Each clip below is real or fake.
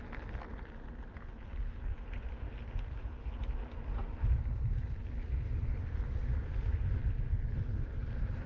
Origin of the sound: real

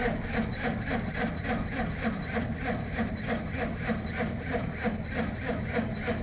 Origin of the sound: real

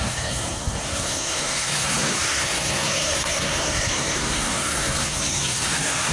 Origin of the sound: fake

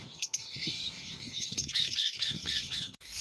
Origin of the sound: fake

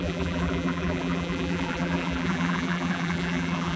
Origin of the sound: fake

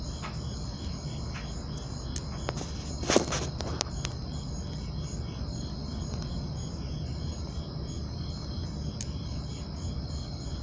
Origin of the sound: real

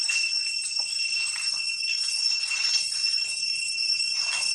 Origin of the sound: real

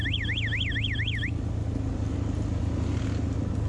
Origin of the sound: real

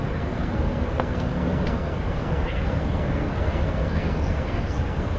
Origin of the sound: fake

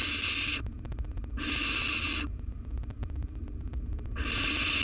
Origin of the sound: real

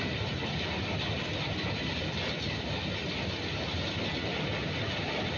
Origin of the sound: real